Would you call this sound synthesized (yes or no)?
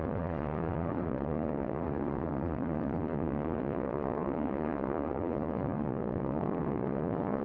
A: yes